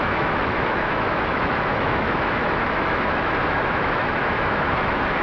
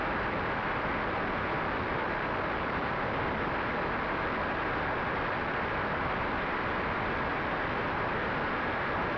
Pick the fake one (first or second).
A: first